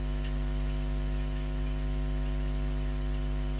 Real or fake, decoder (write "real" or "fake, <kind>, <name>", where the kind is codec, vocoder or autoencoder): real